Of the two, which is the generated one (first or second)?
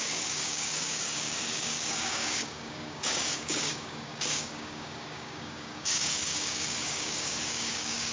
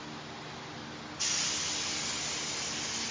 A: first